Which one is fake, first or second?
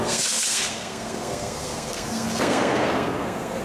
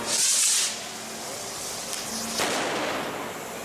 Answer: first